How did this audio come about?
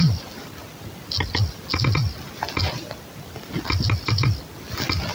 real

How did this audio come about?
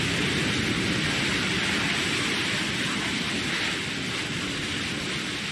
real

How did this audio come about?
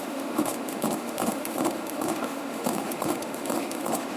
fake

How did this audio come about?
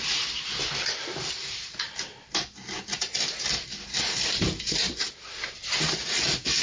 fake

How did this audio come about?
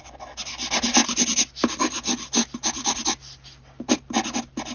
real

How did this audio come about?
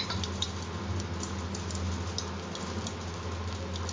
real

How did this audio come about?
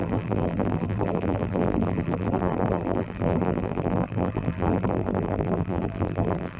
fake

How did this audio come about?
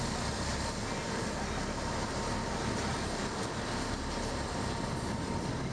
real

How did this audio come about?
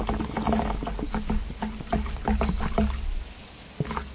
real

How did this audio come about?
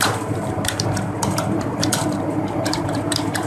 fake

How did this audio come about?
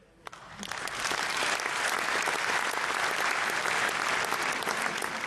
real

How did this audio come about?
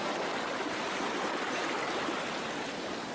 real